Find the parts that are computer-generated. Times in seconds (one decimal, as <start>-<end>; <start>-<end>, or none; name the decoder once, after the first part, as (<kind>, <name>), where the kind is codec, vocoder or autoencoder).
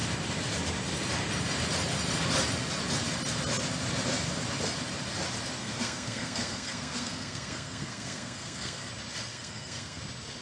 5.6-8.9 (codec, SNAC); 9.3-10.0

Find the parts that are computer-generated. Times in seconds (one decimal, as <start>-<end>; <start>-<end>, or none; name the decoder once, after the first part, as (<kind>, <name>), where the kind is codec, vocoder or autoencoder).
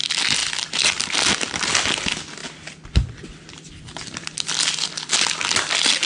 none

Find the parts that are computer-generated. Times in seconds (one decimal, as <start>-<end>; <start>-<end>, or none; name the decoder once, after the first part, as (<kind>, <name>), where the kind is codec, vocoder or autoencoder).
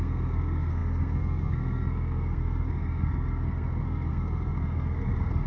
0.0-5.5 (codec, SNAC)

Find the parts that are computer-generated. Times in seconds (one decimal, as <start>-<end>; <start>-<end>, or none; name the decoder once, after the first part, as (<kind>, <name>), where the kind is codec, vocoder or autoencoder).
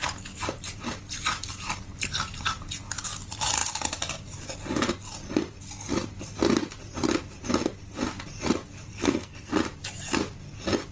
8.9-9.5 (codec, SNAC)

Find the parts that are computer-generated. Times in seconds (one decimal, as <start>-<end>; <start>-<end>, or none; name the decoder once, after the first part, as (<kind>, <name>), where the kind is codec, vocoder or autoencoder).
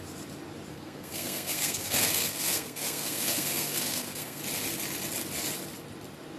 0.7-4.4 (codec, SNAC)